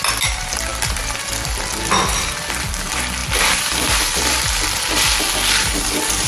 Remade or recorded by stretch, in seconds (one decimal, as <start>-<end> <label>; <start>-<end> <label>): 0.0-6.3 remade